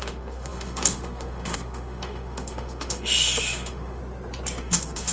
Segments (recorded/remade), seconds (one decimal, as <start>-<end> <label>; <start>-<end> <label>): 0.0-4.0 remade; 4.0-4.6 recorded; 4.6-5.1 remade